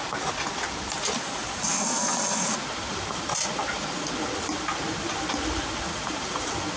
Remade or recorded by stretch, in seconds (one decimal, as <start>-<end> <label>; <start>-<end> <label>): 0.0-6.8 recorded